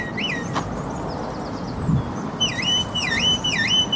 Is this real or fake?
real